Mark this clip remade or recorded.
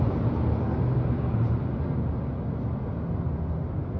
recorded